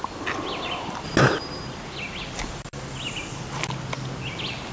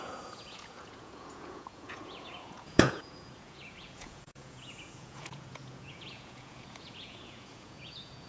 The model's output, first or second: second